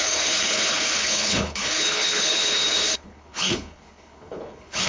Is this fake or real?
fake